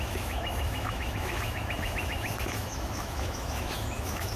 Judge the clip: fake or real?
fake